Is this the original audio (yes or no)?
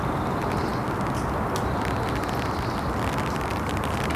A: yes